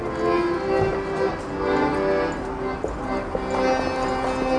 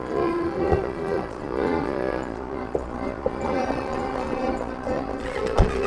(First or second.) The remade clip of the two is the second